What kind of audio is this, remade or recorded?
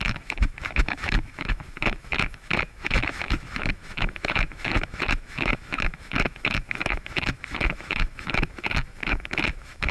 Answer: remade